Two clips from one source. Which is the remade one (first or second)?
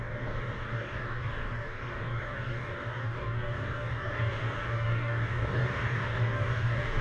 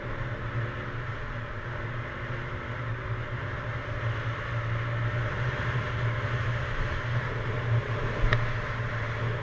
first